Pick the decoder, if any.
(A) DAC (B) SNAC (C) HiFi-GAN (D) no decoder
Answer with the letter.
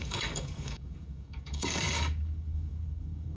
A